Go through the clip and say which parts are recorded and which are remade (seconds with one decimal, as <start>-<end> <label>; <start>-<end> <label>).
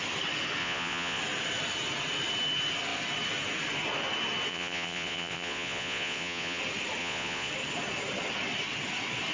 0.0-0.6 recorded; 0.6-1.2 remade; 1.2-4.5 recorded; 4.5-6.6 remade; 6.6-7.0 recorded; 7.0-7.5 remade; 7.5-9.3 recorded